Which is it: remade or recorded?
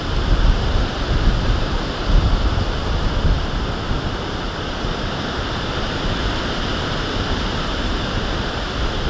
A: remade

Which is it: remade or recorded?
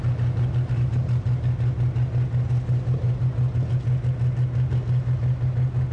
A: recorded